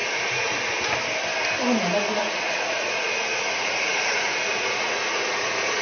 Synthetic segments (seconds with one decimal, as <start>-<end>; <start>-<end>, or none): 0.0-0.6; 2.2-5.8